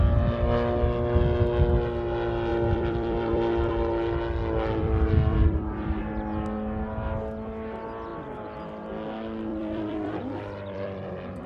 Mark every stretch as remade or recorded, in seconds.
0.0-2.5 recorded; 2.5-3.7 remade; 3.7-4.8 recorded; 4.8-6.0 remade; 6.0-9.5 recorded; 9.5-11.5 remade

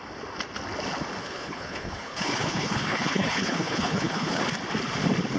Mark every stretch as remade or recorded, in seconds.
0.0-1.2 recorded; 1.2-4.4 remade; 4.4-5.4 recorded

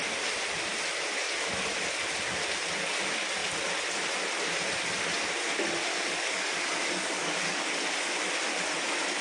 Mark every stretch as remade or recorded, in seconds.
0.0-5.9 recorded; 5.9-7.7 remade; 7.7-9.2 recorded

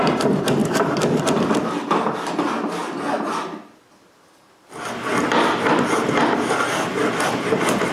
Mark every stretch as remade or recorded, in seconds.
0.0-0.6 recorded; 0.6-1.2 remade; 1.2-7.9 recorded

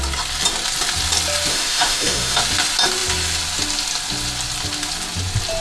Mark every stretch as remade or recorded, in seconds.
0.0-1.5 recorded; 1.5-2.4 remade; 2.4-5.6 recorded

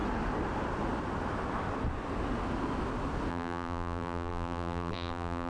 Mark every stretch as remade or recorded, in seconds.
0.0-3.3 recorded; 3.3-5.5 remade

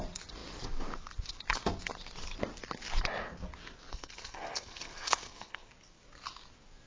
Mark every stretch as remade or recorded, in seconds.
0.0-3.9 recorded; 3.9-5.7 remade; 5.7-6.9 recorded

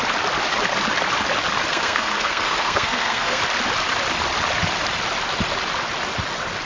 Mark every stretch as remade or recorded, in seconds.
0.0-1.7 recorded; 1.7-3.4 remade; 3.4-6.7 recorded